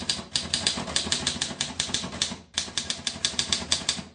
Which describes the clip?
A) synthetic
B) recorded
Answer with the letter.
B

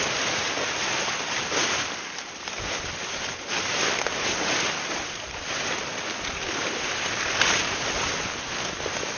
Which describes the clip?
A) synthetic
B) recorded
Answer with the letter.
B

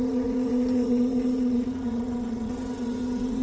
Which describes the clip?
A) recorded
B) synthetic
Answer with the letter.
B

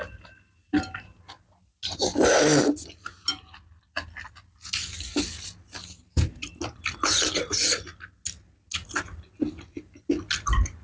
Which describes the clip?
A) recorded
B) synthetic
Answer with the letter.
A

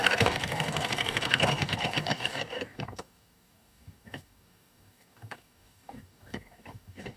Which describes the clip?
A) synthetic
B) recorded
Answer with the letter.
A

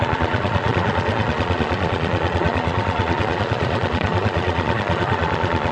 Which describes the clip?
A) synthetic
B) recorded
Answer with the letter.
A